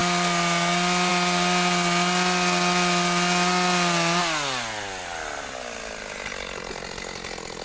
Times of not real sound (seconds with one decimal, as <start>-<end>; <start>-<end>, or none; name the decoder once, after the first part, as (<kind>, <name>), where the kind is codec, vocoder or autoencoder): none